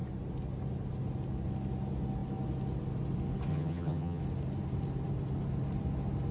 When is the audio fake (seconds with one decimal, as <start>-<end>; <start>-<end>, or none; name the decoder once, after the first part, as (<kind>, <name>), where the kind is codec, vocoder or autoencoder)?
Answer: 3.5-4.2 (vocoder, HiFi-GAN)